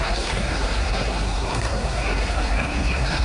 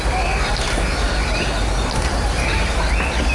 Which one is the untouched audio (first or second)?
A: second